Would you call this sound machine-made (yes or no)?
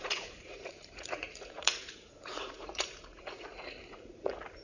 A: yes